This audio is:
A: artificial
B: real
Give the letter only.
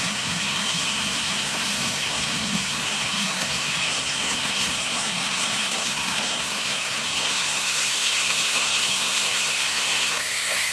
A